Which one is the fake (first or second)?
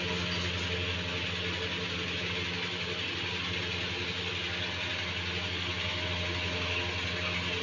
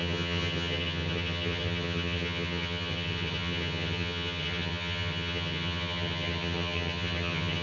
second